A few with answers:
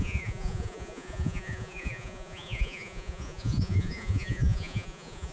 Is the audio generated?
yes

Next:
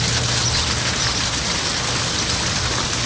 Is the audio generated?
no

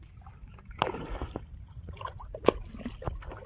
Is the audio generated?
no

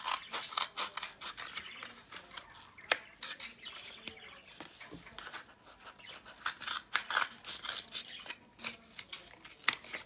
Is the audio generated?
no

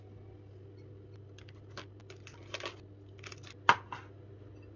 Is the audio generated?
no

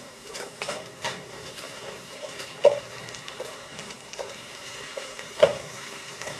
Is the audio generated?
yes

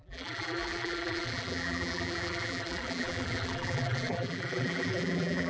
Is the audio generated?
yes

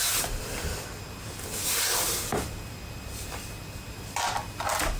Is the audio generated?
yes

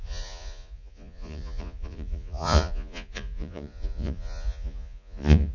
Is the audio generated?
yes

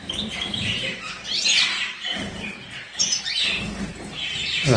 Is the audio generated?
yes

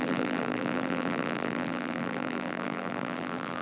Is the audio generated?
yes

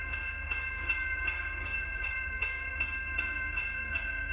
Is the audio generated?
yes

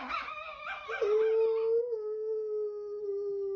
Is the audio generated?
no